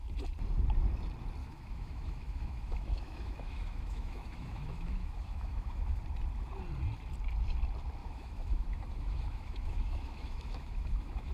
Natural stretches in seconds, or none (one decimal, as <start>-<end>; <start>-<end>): 0.0-1.4; 6.0-8.0